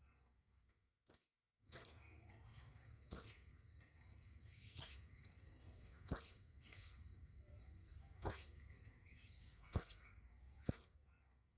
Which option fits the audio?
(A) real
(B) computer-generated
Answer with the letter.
B